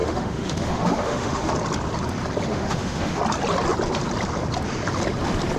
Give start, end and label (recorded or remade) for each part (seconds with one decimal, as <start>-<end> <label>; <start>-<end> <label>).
0.0-1.5 remade; 1.5-2.5 recorded; 2.5-3.2 remade; 3.2-5.6 recorded